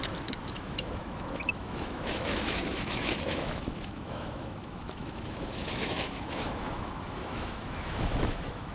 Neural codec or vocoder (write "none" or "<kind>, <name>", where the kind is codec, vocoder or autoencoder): autoencoder, DAC-VAE